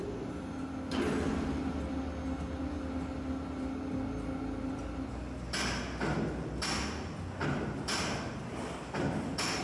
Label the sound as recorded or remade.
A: recorded